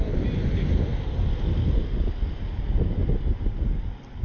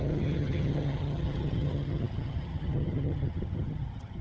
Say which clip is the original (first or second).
first